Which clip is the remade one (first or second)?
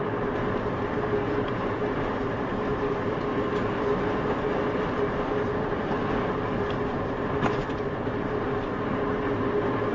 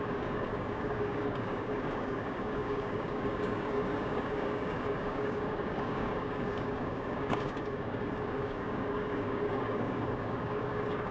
second